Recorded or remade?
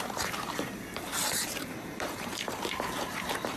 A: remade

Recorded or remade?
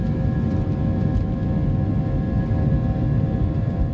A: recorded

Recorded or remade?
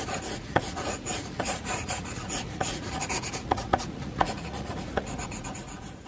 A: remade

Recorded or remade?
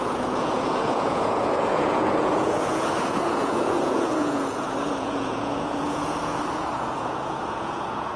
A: remade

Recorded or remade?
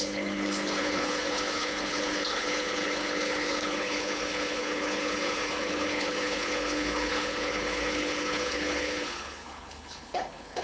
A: remade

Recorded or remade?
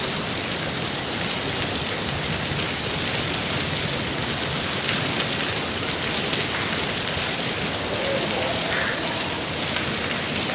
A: recorded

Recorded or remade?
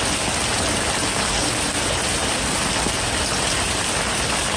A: recorded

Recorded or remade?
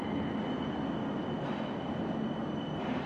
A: recorded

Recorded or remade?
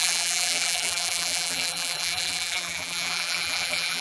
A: remade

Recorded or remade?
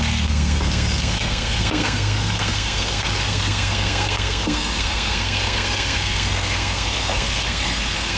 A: remade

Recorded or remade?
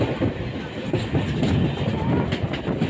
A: recorded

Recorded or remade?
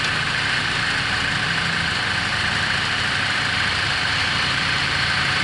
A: remade